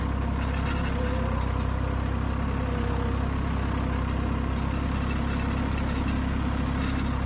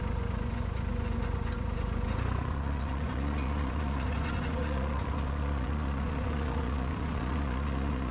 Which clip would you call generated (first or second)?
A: second